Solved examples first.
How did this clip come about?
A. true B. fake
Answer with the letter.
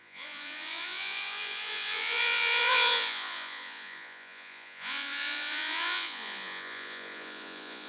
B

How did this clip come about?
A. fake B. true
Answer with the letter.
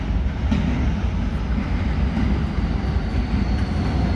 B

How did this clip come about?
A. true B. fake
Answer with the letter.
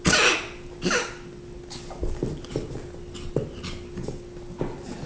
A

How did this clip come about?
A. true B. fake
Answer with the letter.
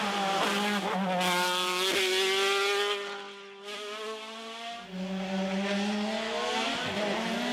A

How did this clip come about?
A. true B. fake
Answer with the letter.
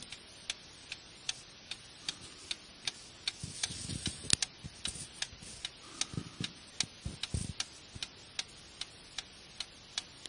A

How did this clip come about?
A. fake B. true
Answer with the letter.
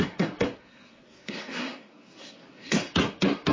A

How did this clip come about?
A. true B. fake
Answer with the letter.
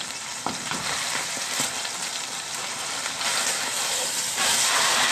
B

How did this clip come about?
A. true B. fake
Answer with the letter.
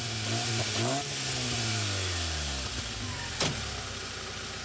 A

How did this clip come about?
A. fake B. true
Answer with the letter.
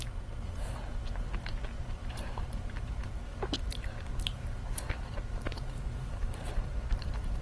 A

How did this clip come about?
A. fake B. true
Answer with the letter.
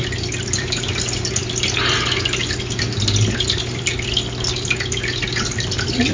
B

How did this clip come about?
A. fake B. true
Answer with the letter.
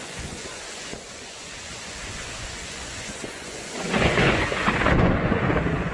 A